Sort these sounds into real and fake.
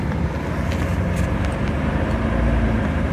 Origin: real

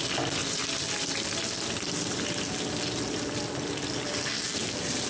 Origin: real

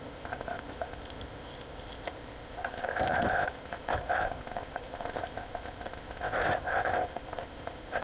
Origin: fake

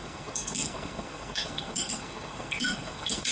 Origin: fake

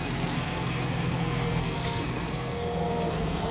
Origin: fake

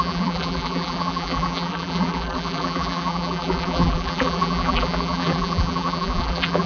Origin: fake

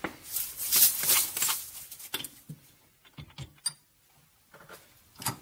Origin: real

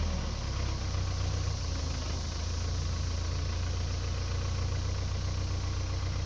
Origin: real